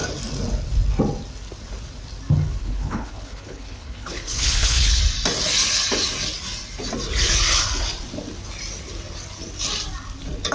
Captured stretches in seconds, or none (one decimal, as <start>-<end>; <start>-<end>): 0.0-2.6; 5.0-10.5